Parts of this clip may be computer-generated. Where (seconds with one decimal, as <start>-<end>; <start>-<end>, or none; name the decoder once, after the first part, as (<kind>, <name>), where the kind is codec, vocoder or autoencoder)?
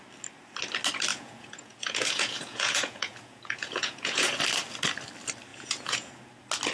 1.1-4.4 (vocoder, Vocos); 5.5-6.1